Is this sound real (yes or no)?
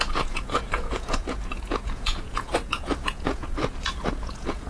no